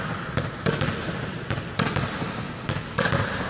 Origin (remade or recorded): recorded